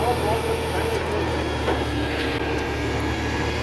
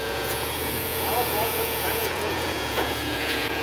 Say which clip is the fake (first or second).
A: second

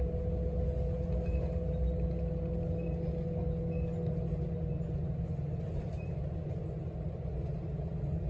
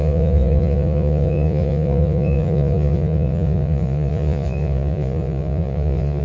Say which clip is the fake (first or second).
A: second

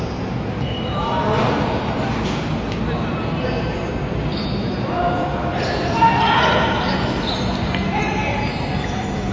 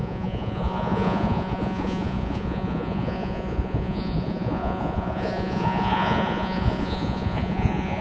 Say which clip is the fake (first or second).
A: second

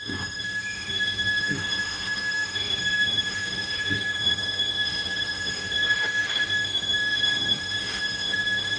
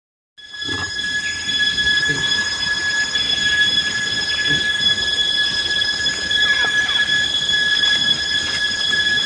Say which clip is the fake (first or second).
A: first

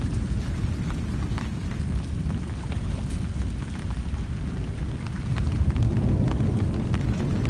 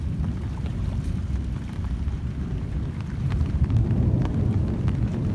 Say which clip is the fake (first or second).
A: second